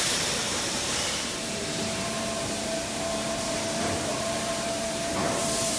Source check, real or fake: fake